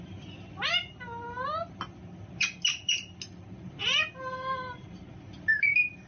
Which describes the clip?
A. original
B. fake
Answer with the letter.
A